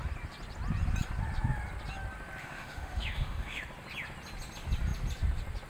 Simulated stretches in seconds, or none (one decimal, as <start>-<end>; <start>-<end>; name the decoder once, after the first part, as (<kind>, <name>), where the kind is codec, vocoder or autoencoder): 2.4-3.6 (autoencoder, DAC-VAE)